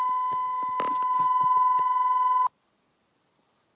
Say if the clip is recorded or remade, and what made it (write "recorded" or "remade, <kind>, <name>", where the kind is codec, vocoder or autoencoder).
recorded